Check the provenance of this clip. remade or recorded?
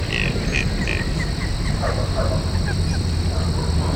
recorded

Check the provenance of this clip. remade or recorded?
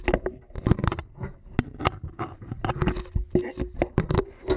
recorded